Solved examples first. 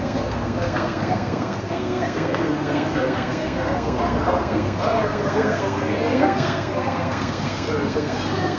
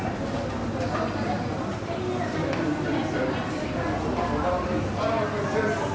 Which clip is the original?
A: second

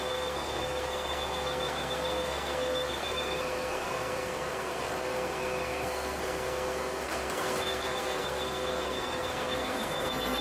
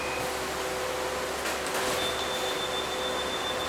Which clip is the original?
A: second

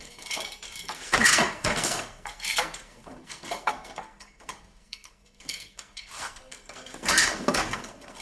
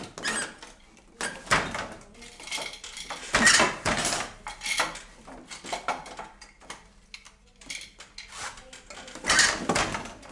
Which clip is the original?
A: second